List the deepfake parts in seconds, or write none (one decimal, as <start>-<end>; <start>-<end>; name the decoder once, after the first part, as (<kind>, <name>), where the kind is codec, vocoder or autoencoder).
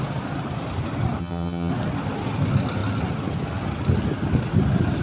1.2-1.7 (vocoder, HiFi-GAN)